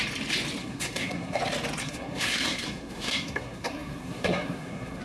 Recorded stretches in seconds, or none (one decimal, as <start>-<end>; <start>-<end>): 0.0-0.6; 1.4-1.8